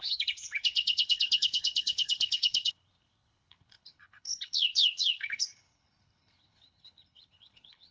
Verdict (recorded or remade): remade